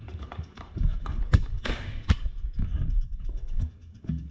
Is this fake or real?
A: fake